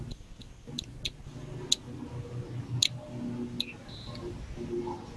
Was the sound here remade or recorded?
recorded